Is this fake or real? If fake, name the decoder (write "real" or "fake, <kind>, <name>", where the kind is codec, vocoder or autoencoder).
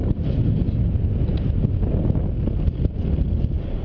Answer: real